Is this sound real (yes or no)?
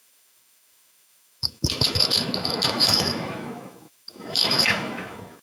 no